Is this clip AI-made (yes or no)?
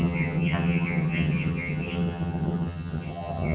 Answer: yes